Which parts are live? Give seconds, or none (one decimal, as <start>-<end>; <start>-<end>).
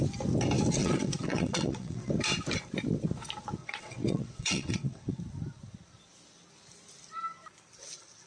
0.0-0.8; 2.1-3.6; 5.2-8.3